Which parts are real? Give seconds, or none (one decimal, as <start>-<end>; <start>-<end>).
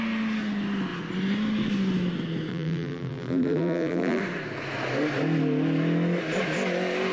0.0-2.5; 4.2-7.1